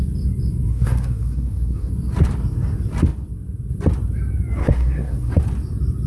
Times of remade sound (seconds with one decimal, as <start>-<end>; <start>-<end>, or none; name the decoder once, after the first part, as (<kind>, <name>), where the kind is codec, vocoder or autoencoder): 0.7-1.9 (codec, SNAC); 4.6-5.3